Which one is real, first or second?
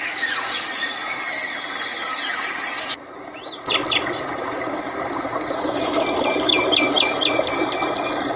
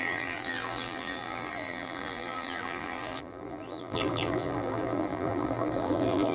first